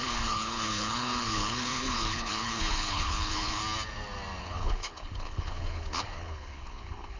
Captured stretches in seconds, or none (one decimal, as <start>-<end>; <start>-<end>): 3.6-4.4